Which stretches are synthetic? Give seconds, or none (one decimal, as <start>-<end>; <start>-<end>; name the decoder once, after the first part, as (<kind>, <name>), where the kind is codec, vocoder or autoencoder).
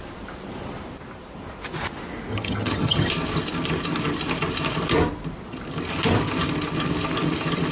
2.3-3.1 (vocoder, HiFi-GAN)